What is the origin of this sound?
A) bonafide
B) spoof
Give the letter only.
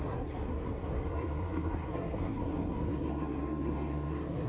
B